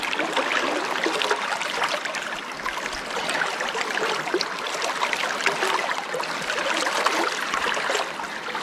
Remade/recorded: recorded